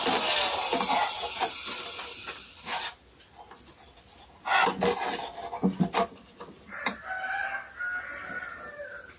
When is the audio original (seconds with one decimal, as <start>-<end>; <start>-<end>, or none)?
0.0-9.2